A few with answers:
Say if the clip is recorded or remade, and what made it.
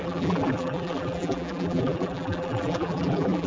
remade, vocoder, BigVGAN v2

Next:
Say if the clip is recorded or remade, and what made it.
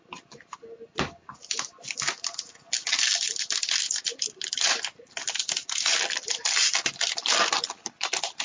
recorded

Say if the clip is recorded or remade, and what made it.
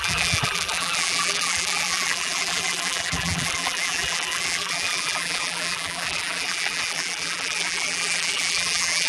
remade, vocoder, BigVGAN v2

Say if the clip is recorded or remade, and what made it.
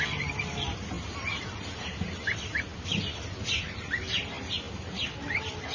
remade, vocoder, BigVGAN v2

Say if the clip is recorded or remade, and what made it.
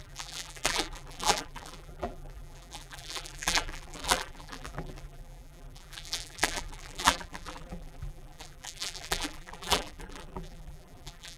remade, vocoder, BigVGAN v2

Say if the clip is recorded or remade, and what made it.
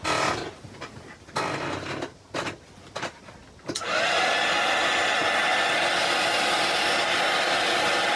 recorded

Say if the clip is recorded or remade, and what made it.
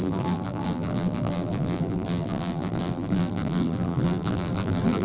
remade, vocoder, BigVGAN v2